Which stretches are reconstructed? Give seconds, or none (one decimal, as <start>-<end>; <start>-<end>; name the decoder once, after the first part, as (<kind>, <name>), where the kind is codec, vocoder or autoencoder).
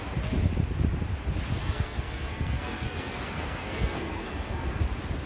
1.6-4.8 (codec, SNAC)